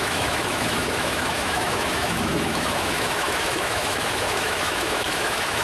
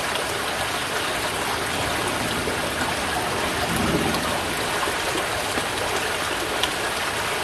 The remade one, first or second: first